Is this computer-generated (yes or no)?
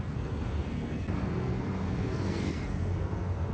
yes